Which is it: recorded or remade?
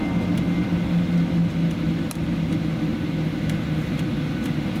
recorded